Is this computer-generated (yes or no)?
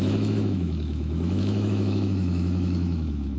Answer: yes